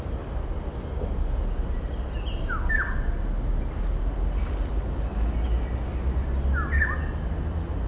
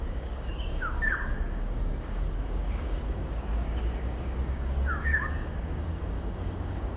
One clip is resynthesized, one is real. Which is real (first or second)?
first